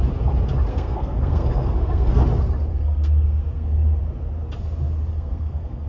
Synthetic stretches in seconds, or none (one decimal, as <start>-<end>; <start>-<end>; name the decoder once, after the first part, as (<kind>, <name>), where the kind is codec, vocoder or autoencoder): 0.7-2.2 (codec, SNAC); 2.7-4.0; 5.1-5.9